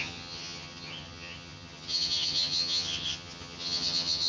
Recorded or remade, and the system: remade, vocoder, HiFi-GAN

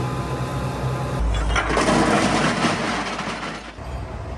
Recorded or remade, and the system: recorded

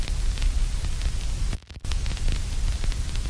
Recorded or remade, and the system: recorded